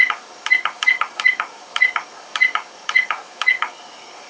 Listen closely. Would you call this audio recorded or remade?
remade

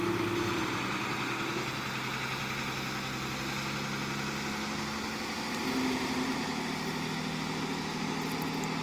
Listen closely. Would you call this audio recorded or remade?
recorded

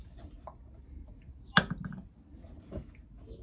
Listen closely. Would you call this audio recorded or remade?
recorded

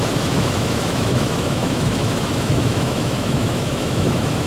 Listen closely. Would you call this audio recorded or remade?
remade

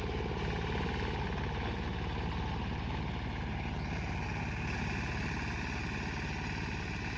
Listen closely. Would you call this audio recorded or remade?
recorded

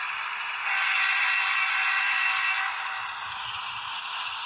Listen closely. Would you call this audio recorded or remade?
recorded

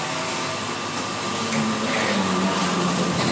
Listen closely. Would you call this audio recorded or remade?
recorded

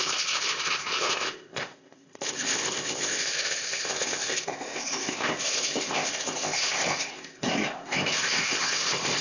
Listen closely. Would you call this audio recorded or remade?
remade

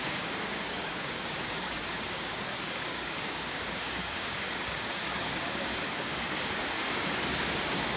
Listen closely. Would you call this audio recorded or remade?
remade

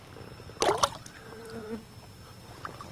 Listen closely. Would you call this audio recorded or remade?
recorded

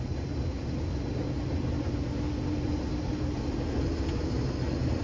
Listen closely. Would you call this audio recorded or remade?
recorded